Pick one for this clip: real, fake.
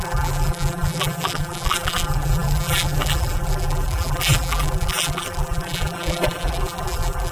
fake